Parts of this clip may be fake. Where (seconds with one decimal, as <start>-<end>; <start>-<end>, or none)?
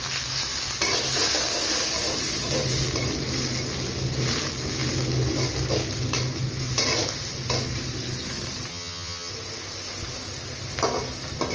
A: 8.7-9.3